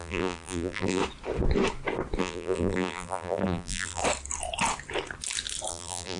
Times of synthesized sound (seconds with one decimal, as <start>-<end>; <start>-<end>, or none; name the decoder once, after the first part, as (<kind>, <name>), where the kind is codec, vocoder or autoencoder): 0.0-1.0 (vocoder, BigVGAN v2); 2.2-4.0; 5.7-6.2